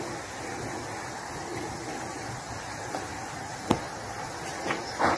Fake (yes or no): no